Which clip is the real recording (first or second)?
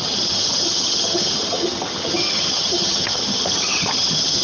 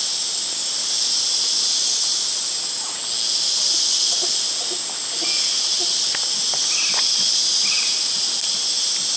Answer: second